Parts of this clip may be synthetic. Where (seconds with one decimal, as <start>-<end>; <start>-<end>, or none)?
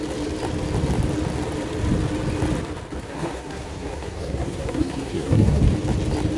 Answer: 3.0-5.6